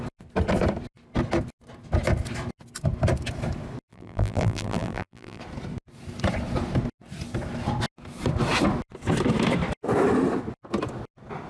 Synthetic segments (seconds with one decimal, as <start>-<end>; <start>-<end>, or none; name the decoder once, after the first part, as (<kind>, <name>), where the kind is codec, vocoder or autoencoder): 3.9-5.4 (vocoder, BigVGAN v2)